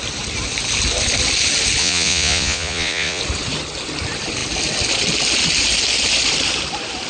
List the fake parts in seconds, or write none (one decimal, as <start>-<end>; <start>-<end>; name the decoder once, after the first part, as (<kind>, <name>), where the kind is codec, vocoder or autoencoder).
1.8-3.2 (vocoder, Vocos)